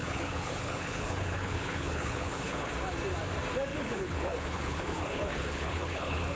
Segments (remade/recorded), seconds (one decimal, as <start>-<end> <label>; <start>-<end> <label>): 0.0-2.7 remade; 2.7-3.7 recorded; 3.7-6.4 remade